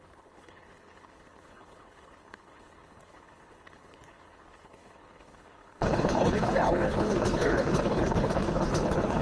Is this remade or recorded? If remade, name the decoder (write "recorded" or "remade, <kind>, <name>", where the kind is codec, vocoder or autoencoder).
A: remade, codec, HILCodec